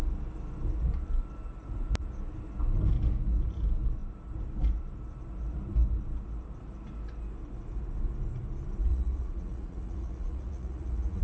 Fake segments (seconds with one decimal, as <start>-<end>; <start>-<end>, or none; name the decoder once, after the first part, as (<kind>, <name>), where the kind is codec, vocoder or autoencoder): 8.9-11.2 (vocoder, Vocos)